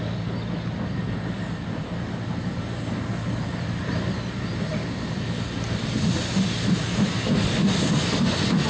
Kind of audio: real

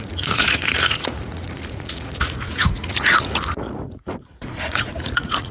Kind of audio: fake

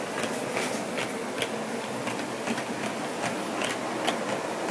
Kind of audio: real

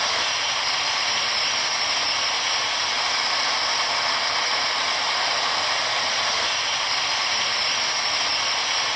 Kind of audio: real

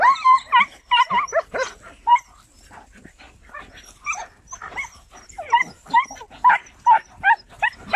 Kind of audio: fake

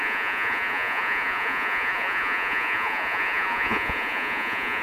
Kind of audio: fake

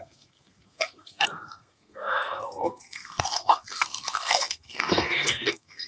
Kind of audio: fake